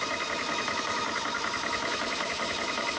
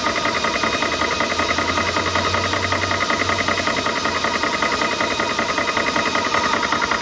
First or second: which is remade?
first